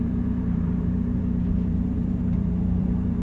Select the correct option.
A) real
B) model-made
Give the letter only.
B